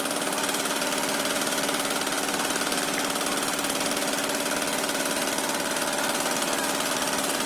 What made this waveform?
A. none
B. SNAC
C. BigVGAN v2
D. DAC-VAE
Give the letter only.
A